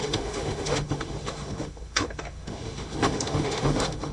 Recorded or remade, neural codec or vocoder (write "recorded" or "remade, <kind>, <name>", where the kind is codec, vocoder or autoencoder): remade, autoencoder, DAC-VAE